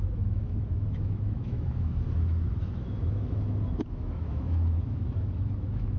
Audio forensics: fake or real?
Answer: fake